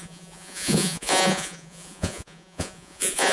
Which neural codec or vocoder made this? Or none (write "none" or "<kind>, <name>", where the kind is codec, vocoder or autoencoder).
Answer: vocoder, Vocos